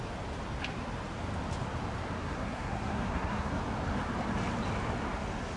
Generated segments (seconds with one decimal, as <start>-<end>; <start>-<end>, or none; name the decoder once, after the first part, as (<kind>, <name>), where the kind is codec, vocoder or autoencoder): 2.2-3.6 (codec, SNAC)